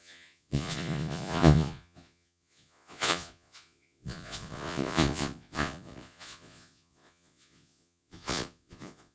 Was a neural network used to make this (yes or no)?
yes